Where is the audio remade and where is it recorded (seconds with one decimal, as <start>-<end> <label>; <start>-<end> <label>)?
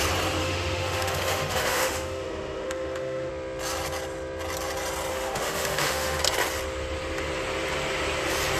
0.0-0.4 recorded; 0.4-3.3 remade; 3.3-5.1 recorded; 5.1-6.2 remade; 6.2-8.6 recorded